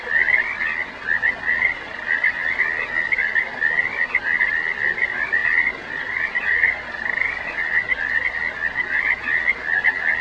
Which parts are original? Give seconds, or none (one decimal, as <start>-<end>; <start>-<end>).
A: 0.0-10.2